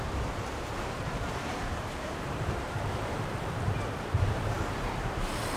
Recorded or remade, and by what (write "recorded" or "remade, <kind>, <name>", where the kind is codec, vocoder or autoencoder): remade, vocoder, BigVGAN v2